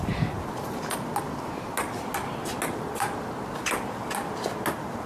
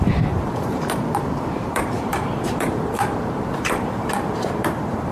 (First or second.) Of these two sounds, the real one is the first